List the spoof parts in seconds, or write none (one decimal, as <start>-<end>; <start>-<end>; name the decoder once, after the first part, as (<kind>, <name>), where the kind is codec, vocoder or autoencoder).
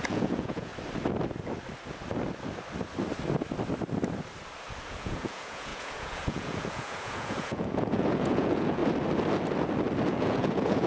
0.0-0.7 (vocoder, Vocos); 4.8-8.8; 10.1-10.9